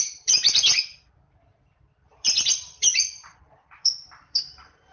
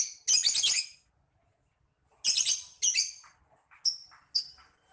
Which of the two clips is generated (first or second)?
first